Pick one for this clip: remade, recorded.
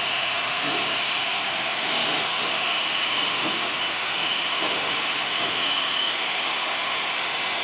remade